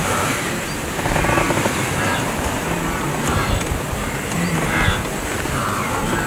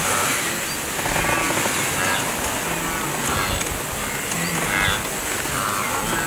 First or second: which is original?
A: second